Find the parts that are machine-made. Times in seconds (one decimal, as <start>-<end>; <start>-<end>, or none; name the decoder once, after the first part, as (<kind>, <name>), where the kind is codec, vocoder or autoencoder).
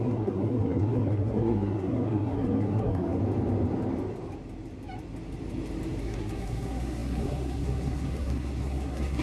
0.0-3.2 (codec, SNAC); 6.0-9.2